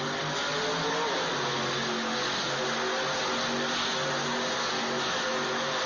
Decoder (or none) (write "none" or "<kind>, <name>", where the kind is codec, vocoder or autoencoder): none